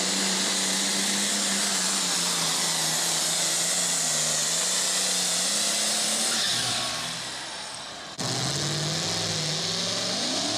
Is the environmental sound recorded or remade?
recorded